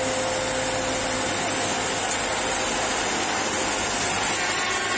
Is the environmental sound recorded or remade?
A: recorded